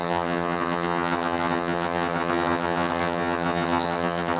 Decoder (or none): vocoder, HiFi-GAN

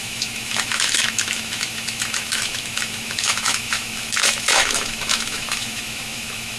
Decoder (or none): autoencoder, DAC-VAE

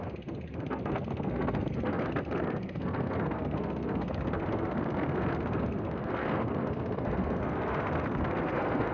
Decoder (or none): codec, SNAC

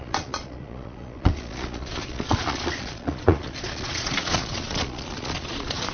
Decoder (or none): vocoder, Vocos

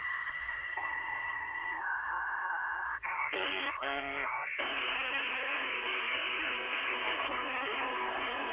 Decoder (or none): codec, SNAC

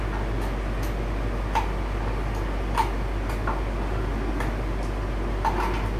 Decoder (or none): none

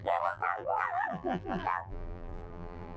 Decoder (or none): vocoder, BigVGAN v2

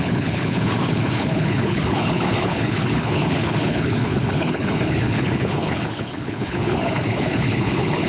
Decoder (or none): codec, HILCodec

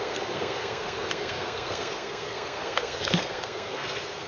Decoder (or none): codec, SNAC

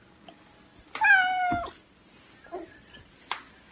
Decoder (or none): none